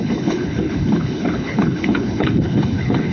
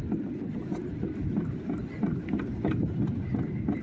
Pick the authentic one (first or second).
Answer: second